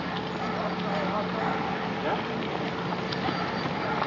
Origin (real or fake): real